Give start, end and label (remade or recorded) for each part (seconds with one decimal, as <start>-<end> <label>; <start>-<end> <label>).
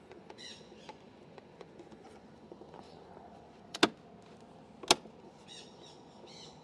0.0-3.8 remade; 3.8-5.2 recorded; 5.2-6.6 remade